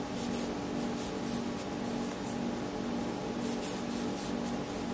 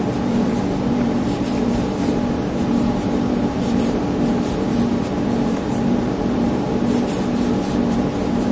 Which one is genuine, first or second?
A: first